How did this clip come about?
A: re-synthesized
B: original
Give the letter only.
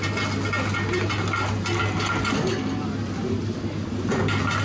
B